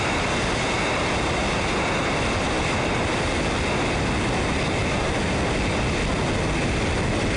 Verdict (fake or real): real